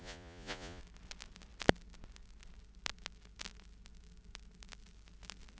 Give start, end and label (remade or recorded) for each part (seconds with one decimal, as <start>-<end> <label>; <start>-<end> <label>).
0.0-0.8 remade; 0.8-5.6 recorded